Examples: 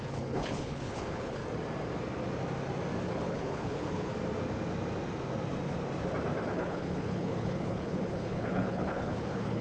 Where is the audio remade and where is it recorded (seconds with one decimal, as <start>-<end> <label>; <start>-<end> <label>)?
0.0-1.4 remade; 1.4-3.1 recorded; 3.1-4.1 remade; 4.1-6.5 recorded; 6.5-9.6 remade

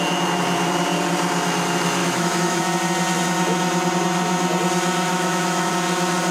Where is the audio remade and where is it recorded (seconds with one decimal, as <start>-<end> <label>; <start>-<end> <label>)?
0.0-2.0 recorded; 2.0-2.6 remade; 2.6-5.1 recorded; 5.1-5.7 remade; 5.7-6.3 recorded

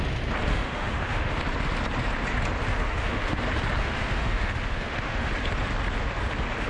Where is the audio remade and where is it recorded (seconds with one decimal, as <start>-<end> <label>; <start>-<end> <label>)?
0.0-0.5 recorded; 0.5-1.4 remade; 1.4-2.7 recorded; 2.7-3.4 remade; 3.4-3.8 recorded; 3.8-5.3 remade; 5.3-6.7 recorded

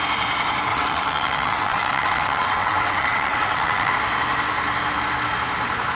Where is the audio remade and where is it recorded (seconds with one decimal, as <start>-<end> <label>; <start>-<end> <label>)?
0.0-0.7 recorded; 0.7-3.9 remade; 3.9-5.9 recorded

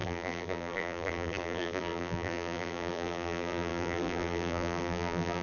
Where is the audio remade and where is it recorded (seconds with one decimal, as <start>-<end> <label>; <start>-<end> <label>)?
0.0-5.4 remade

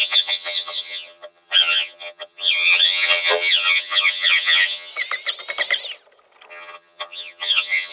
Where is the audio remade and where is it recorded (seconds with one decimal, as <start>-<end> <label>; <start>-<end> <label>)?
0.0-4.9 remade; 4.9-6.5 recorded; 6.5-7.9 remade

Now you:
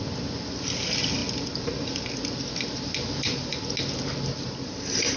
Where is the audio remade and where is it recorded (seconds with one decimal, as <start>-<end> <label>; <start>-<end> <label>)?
0.0-5.2 recorded

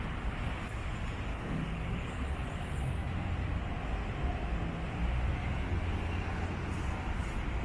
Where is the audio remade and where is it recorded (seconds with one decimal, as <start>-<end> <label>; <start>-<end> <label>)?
0.0-1.3 recorded; 1.3-2.1 remade; 2.1-7.6 recorded